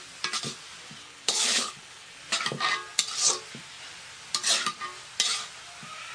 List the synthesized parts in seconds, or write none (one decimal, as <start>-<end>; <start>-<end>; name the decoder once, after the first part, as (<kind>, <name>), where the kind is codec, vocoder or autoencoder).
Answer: 1.0-2.2 (codec, HILCodec)